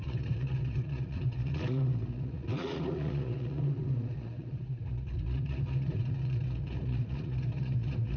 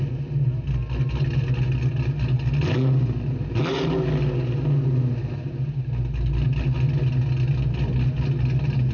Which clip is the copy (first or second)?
first